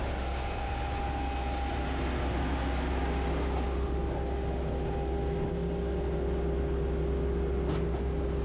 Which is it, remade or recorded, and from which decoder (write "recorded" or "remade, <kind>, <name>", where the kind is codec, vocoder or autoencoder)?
recorded